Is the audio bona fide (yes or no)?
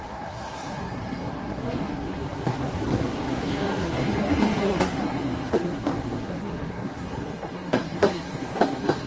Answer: no